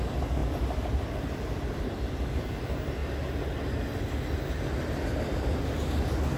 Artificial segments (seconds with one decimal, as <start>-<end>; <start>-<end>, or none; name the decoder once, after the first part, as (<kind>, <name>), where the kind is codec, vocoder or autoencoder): 0.4-2.6 (vocoder, BigVGAN v2)